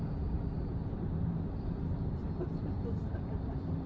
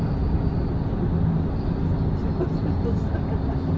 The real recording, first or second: second